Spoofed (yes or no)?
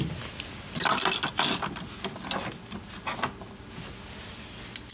no